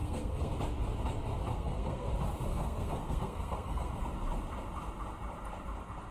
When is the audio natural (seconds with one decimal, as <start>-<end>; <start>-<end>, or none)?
0.5-1.5; 2.1-2.5; 3.9-6.1